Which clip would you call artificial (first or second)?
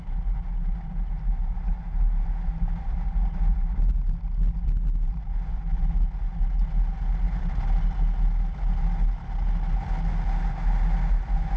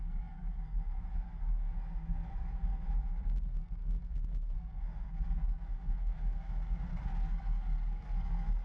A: second